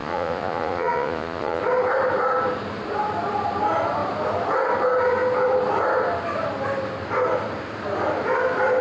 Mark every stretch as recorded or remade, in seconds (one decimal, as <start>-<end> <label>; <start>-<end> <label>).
0.0-1.6 remade; 1.6-8.8 recorded